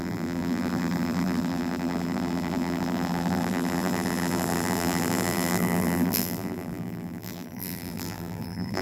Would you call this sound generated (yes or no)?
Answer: yes